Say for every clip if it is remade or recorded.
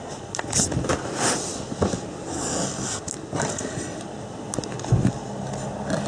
recorded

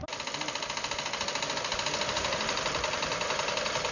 recorded